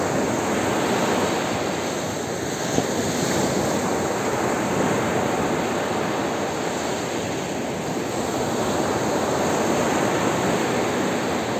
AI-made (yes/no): no